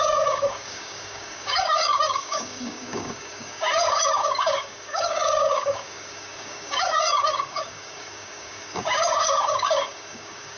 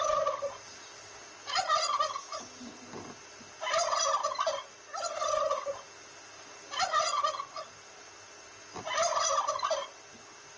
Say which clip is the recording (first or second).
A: second